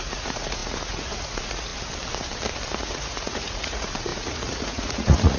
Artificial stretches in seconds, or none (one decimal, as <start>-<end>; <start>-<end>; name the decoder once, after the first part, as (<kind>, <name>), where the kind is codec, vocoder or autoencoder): 0.0-1.7 (vocoder, Vocos); 2.8-5.4